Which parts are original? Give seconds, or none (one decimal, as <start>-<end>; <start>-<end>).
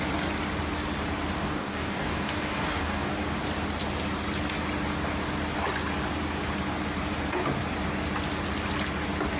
0.0-1.4; 3.1-9.4